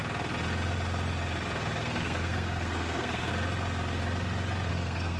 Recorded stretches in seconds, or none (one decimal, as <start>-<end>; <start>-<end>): 0.0-1.8; 3.3-4.7